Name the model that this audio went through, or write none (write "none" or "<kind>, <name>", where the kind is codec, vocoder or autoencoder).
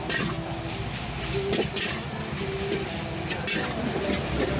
none